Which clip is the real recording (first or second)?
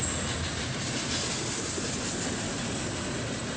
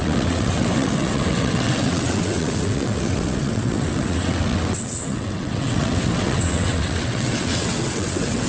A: first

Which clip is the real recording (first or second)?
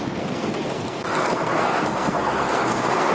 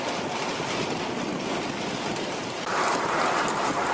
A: second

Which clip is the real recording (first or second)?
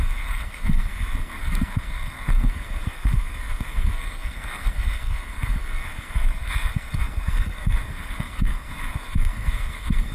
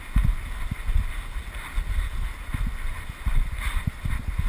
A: second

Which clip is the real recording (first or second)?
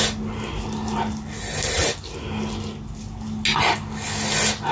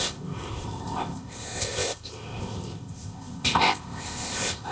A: first